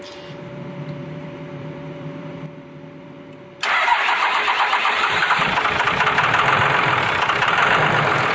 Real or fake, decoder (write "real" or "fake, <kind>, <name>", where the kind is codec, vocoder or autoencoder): fake, vocoder, BigVGAN v2